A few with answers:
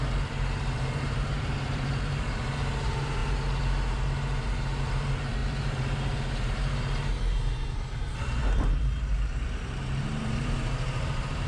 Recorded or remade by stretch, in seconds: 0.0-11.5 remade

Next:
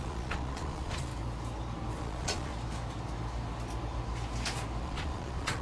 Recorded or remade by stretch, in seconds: 0.0-1.1 remade; 1.1-2.0 recorded; 2.0-2.5 remade; 2.5-4.8 recorded; 4.8-5.6 remade